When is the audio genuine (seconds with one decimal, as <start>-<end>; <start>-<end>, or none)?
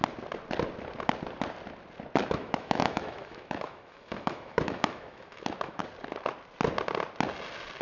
0.0-2.2; 5.8-7.8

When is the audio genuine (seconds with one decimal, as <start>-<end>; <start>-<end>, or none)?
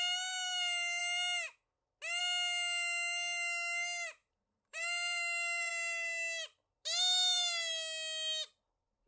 0.0-4.2; 5.7-9.1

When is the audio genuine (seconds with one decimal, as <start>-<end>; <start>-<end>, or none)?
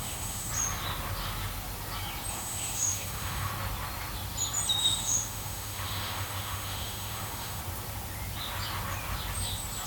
0.5-2.3; 3.5-4.8; 7.6-9.9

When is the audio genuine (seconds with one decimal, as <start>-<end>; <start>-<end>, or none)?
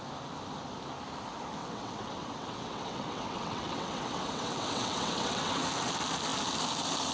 0.0-1.6; 5.6-7.1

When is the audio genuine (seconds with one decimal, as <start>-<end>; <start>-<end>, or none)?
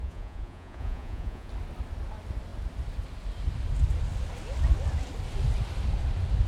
1.5-6.5